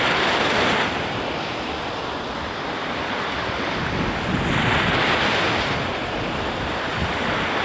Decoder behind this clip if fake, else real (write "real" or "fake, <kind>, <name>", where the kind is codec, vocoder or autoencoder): real